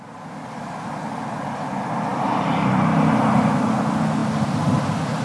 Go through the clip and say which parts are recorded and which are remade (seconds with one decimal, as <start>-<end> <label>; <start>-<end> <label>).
0.0-2.1 recorded; 2.1-3.7 remade; 3.7-5.2 recorded